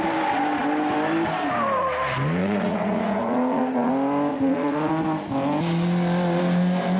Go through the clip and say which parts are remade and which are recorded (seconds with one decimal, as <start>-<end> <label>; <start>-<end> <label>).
0.0-2.4 recorded; 2.4-3.9 remade; 3.9-4.3 recorded; 4.3-4.9 remade; 4.9-7.0 recorded